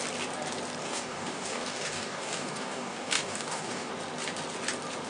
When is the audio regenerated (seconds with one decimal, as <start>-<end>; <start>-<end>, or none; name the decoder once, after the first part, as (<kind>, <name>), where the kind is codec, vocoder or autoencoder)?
0.8-3.9 (codec, DAC)